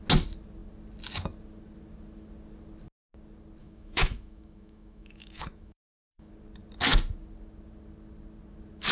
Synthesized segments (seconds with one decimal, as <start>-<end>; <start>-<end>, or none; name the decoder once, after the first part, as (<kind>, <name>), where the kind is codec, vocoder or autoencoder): 3.6-6.3 (autoencoder, DAC-VAE)